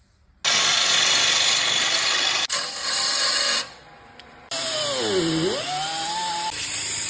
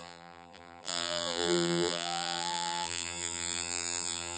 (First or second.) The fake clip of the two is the second